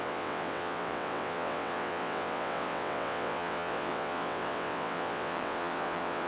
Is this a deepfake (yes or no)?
yes